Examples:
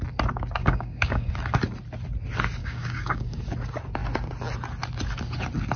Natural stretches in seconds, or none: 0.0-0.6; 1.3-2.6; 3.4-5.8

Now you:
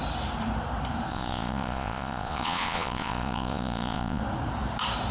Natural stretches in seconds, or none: 0.0-1.1; 4.2-5.1

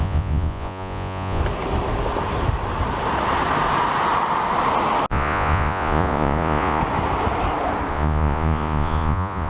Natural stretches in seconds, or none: 1.4-5.1; 6.8-7.9

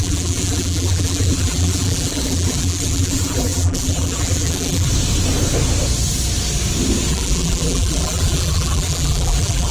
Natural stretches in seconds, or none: 4.9-7.1

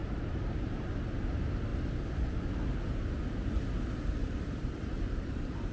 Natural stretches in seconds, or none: 1.0-4.2